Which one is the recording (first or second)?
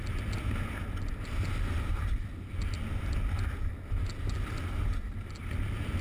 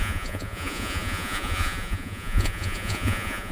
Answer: first